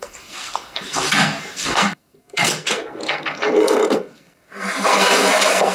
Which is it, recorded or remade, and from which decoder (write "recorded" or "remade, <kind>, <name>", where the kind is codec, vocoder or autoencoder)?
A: remade, codec, SNAC